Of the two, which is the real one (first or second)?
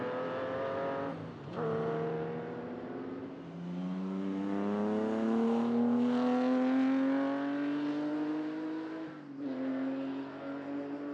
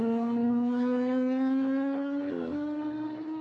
first